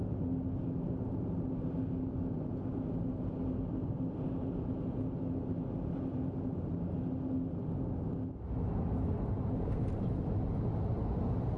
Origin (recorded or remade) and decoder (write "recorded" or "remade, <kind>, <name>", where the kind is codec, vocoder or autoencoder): recorded